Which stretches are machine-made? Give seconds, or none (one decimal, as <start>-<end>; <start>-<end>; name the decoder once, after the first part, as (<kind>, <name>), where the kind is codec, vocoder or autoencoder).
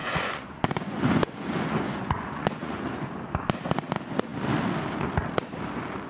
0.0-3.1 (vocoder, Vocos)